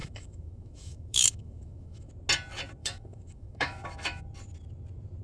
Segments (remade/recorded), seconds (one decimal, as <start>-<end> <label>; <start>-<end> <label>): 0.0-2.1 remade; 2.1-2.8 recorded; 2.8-4.2 remade; 4.2-5.2 recorded